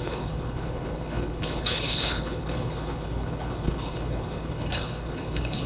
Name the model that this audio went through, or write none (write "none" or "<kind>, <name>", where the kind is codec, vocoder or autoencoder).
codec, HILCodec